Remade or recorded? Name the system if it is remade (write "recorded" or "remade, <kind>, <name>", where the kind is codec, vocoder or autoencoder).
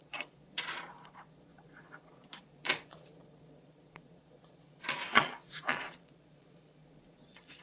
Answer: remade, vocoder, Vocos